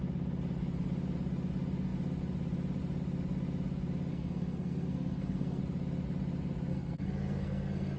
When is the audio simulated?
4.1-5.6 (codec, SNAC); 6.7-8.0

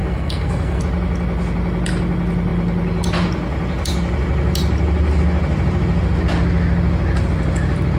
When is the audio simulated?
0.0-0.8 (codec, SNAC)

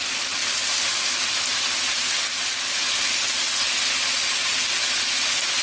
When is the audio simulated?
none

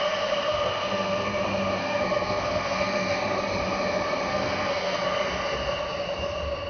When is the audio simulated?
0.5-1.4 (codec, SNAC); 1.8-3.4; 4.3-5.0

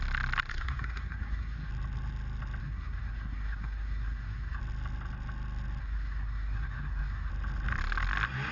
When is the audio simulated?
0.5-1.7 (codec, SNAC); 2.6-4.6; 5.8-7.3

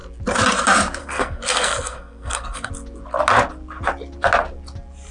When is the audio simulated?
1.0-2.7 (codec, SNAC)

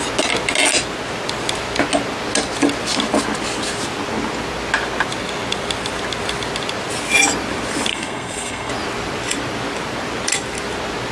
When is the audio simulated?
7.9-8.7 (codec, SNAC)

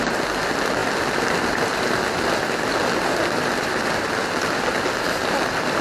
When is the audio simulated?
none